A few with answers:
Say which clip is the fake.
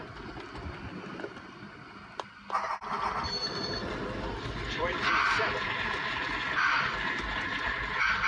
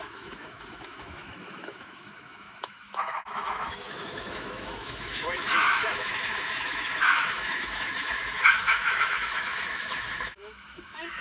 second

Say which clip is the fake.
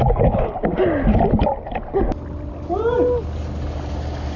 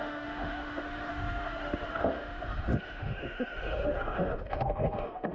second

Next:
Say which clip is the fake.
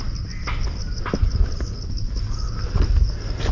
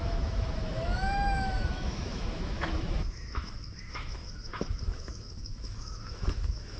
second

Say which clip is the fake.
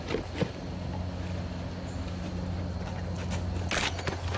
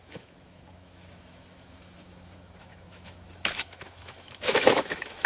second